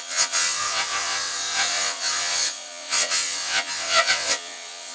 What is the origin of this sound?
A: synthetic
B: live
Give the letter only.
A